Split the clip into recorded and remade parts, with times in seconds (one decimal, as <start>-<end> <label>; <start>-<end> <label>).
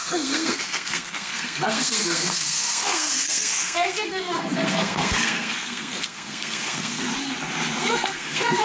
0.0-7.1 remade; 7.1-7.8 recorded; 7.8-8.6 remade